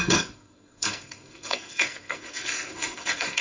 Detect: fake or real fake